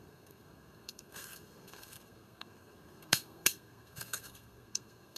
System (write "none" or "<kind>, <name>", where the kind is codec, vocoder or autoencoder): codec, SNAC